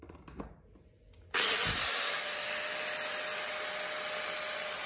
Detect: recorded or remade recorded